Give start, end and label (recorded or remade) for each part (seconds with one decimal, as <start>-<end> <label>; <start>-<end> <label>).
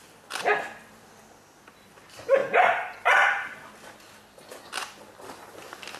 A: 0.0-6.0 recorded